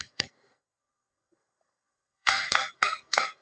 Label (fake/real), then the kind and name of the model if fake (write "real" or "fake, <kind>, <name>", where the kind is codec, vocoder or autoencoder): fake, codec, SNAC